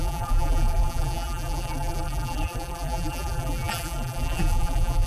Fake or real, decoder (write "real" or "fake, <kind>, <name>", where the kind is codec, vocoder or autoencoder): fake, vocoder, BigVGAN v2